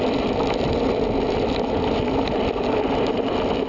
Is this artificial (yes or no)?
no